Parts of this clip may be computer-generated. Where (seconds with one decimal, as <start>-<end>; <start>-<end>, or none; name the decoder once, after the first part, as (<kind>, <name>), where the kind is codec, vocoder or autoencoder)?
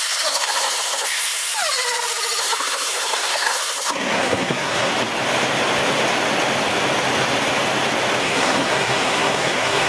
0.0-1.5 (codec, SNAC); 2.4-4.9; 8.2-9.9